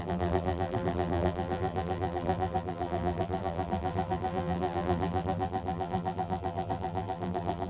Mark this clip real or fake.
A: fake